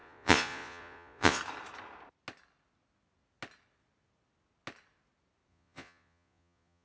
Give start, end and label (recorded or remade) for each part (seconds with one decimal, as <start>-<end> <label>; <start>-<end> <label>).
0.0-1.4 remade; 1.4-5.5 recorded; 5.5-6.8 remade